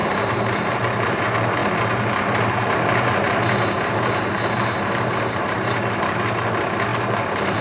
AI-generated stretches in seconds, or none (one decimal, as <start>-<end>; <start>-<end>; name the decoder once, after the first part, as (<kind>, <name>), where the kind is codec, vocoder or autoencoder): 0.0-1.2 (vocoder, BigVGAN v2); 1.6-6.2; 6.9-7.6